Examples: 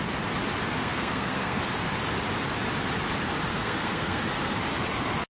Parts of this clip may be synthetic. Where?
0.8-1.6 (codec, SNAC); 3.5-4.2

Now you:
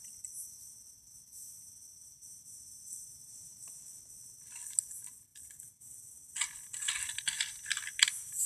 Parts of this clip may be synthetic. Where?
1.9-3.8 (vocoder, BigVGAN v2)

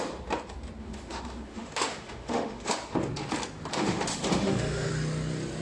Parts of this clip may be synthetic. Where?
0.8-2.7 (autoencoder, DAC-VAE); 3.7-4.9

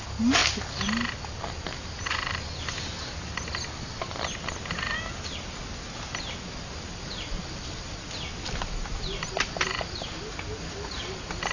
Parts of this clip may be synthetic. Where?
none

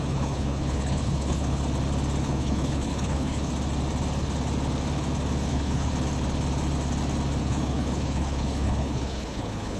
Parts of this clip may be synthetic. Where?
0.0-1.6 (codec, HILCodec); 2.2-3.5; 5.5-5.9; 7.4-9.8

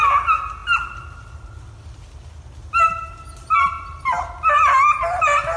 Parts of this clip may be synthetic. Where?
none

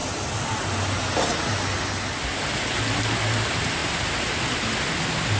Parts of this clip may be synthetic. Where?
none

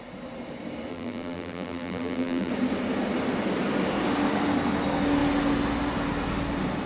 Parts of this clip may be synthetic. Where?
0.9-2.5 (vocoder, BigVGAN v2)